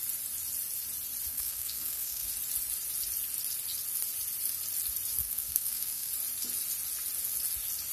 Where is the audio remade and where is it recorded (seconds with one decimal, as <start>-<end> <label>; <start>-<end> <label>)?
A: 0.0-1.3 recorded; 1.3-2.3 remade; 2.3-5.2 recorded; 5.2-6.1 remade; 6.1-7.9 recorded